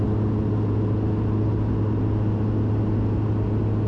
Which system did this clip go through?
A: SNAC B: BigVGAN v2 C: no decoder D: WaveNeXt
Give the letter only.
C